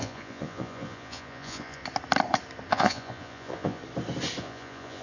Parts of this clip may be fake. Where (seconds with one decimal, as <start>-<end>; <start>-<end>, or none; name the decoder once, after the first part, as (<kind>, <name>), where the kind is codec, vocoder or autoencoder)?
0.0-1.8 (vocoder, Vocos); 2.7-3.8; 4.4-5.0